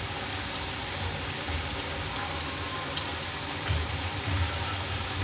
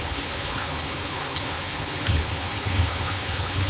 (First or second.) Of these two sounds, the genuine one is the first